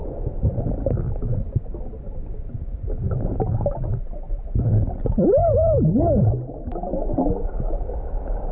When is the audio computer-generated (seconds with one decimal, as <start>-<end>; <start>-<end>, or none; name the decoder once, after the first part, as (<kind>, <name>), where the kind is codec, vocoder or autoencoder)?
none